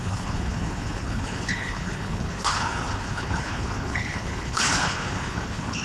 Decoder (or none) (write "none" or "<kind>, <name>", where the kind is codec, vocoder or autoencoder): codec, HILCodec